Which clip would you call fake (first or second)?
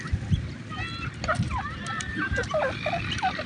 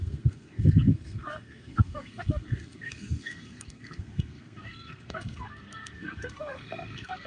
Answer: second